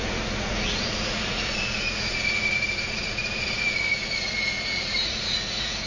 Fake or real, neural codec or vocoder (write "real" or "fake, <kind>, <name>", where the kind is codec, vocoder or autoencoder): fake, vocoder, Vocos